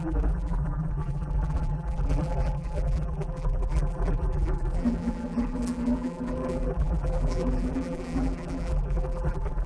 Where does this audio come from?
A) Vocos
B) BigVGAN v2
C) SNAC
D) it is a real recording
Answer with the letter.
B